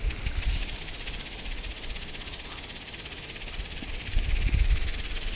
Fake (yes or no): no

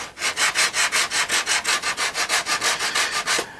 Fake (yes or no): no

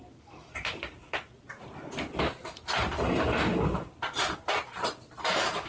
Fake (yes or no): no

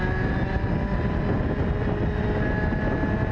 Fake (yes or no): no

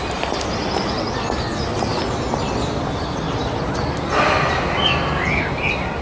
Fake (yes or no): no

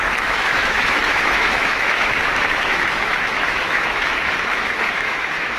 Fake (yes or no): yes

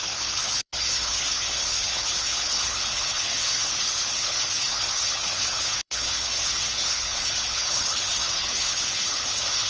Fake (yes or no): yes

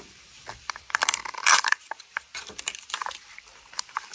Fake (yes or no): yes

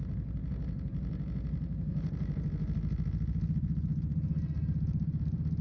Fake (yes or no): no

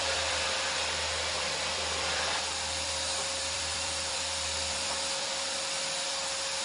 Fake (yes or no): yes